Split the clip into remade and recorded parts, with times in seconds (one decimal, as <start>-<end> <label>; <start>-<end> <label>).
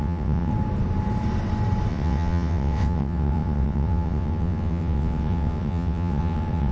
0.0-0.5 remade; 0.5-1.9 recorded; 1.9-6.7 remade